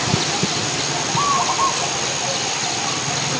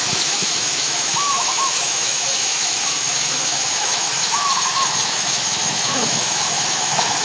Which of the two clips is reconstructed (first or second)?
second